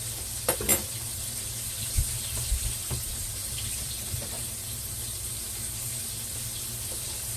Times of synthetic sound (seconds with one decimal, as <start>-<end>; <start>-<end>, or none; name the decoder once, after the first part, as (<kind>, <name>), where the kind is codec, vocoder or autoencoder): 2.8-6.0 (vocoder, BigVGAN v2)